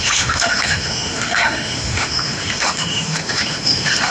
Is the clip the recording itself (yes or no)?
no